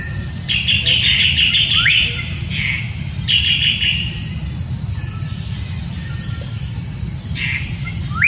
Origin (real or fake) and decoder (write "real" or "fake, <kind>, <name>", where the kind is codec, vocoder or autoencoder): real